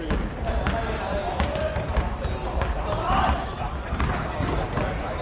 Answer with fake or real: real